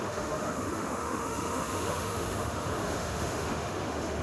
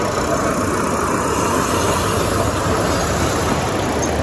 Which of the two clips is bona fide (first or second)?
second